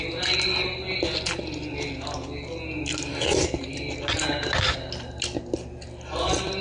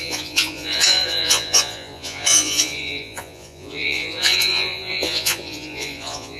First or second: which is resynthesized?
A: second